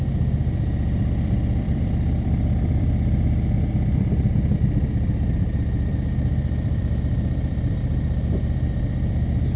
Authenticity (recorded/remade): remade